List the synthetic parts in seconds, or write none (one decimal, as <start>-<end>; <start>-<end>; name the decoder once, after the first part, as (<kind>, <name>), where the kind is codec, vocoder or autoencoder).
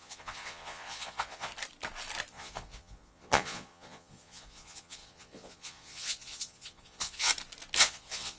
0.0-1.5 (vocoder, Vocos); 2.3-7.3; 7.8-8.4